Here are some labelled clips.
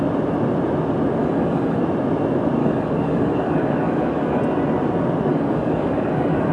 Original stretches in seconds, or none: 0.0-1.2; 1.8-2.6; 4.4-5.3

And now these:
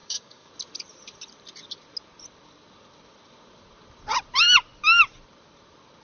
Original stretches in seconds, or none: 0.5-6.0

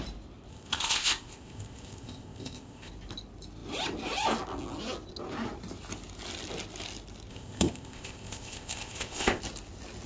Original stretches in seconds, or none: 0.0-0.5; 2.9-7.3; 9.4-10.1

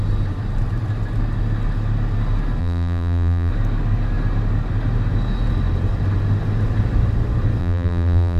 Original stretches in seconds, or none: 0.0-2.6; 3.5-7.6

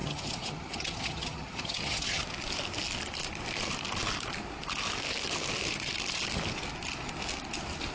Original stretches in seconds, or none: 2.2-7.9

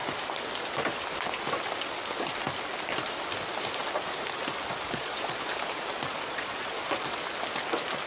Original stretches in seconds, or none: 0.0-4.9; 5.5-6.1; 7.2-8.1

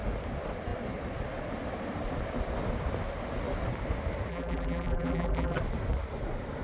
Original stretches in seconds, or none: 0.0-4.3; 5.6-6.6